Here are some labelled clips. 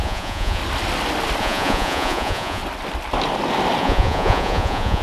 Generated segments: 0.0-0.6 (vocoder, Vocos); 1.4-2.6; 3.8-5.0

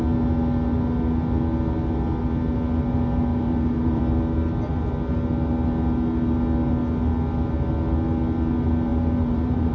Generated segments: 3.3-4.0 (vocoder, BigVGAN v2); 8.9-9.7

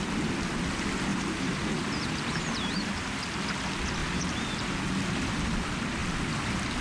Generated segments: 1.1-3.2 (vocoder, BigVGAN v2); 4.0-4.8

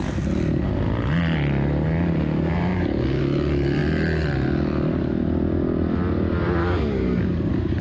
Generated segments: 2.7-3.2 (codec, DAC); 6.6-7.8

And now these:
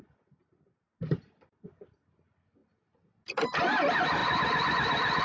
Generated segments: none

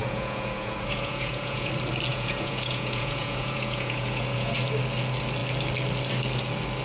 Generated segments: 0.0-1.7 (vocoder, Vocos); 2.1-4.5

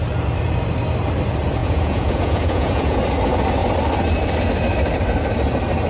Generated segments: 1.6-3.0 (vocoder, Vocos)